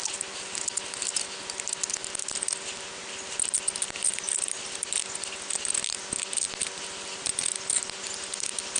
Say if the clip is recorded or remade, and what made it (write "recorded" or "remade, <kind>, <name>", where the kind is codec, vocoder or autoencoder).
recorded